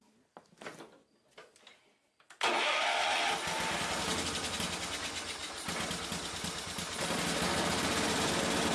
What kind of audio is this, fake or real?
real